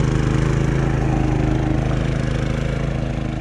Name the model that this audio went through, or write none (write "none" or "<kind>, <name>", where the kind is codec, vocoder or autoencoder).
none